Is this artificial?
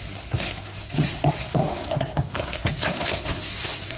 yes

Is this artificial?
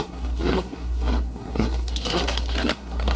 yes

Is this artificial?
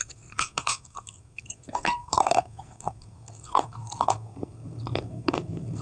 yes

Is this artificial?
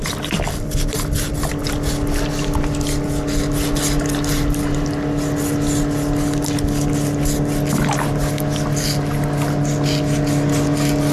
no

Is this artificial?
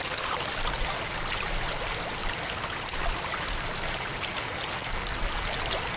no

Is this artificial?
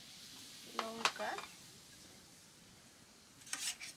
no